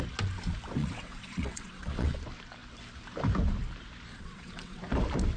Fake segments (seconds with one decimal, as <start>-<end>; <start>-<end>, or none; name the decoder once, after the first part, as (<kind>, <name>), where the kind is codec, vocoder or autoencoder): 0.8-2.2 (vocoder, WaveNeXt); 4.1-4.8